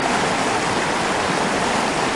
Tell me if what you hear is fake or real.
real